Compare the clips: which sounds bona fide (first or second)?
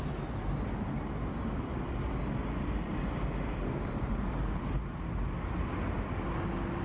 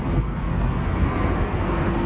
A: first